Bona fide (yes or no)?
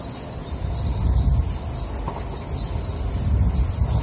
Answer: yes